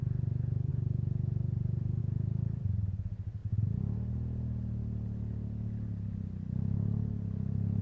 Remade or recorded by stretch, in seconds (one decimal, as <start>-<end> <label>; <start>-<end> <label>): 0.0-7.8 recorded